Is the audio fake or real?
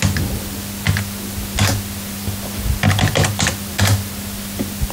real